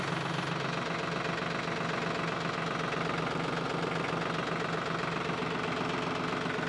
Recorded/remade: recorded